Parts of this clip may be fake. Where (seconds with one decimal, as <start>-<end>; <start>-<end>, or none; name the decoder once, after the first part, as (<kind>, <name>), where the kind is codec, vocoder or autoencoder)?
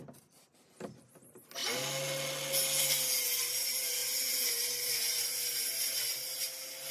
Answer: none